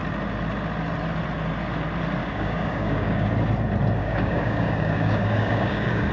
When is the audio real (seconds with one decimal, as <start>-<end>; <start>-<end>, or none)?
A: 0.0-2.2; 3.3-4.0